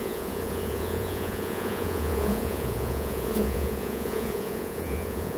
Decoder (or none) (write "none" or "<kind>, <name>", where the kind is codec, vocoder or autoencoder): vocoder, Vocos